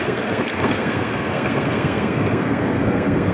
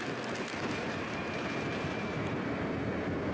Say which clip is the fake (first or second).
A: first